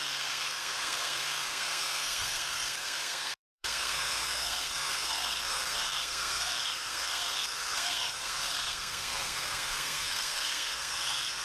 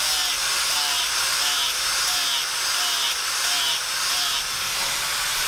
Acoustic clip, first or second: second